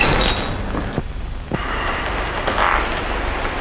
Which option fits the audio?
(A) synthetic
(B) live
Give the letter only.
B